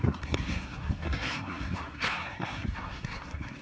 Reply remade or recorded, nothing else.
remade